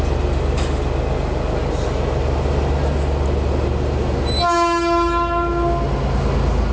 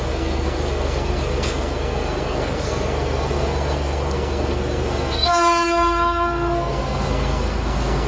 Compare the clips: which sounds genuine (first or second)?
first